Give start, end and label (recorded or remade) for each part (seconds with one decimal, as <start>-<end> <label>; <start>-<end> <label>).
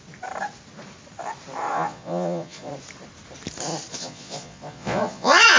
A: 0.0-1.7 recorded; 1.7-2.7 remade; 2.7-3.9 recorded; 3.9-5.6 remade